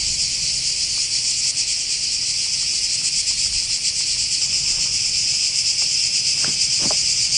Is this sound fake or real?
real